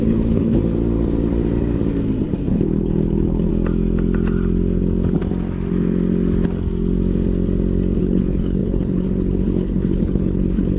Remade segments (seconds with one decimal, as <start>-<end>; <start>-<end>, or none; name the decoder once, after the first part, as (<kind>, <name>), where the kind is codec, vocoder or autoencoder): 0.0-0.6 (codec, HILCodec); 2.4-3.5; 8.0-10.8